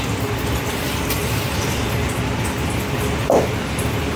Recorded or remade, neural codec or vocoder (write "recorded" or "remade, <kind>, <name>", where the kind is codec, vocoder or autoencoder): recorded